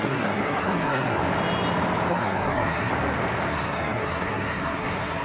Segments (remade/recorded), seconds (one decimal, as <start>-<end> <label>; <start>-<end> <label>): 0.0-1.2 remade; 1.2-2.1 recorded; 2.1-2.9 remade; 2.9-3.5 recorded; 3.5-5.2 remade

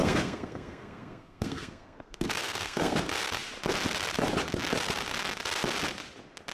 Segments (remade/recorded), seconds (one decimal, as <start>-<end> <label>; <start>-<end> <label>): 0.0-3.0 remade; 3.0-6.5 recorded